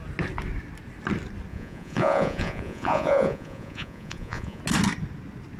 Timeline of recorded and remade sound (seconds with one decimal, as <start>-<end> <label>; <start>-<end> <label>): 0.0-1.5 recorded; 1.5-4.6 remade; 4.6-5.6 recorded